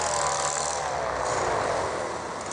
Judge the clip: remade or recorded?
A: recorded